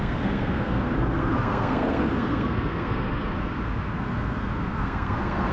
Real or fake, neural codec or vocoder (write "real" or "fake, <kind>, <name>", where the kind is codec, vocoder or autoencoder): fake, codec, SNAC